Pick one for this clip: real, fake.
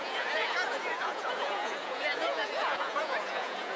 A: fake